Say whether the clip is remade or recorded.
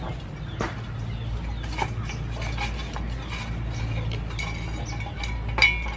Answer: recorded